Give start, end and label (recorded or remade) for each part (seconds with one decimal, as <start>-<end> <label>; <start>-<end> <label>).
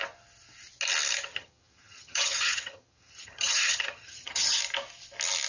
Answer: 0.0-1.3 recorded; 1.3-4.6 remade; 4.6-5.5 recorded